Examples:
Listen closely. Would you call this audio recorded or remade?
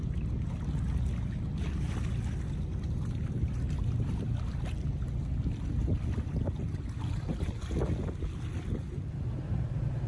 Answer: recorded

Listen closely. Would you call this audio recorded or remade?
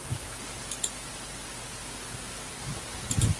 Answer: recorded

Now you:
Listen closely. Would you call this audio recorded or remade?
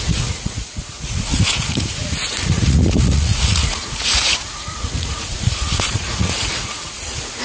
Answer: remade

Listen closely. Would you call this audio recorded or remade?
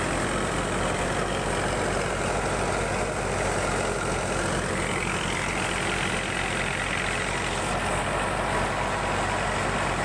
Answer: recorded